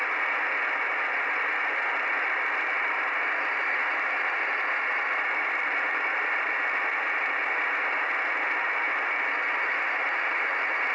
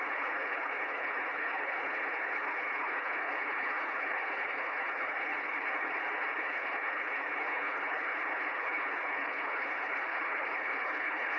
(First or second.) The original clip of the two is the first